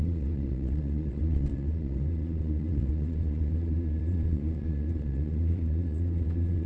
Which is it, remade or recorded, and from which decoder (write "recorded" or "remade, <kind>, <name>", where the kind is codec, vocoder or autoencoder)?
remade, vocoder, Vocos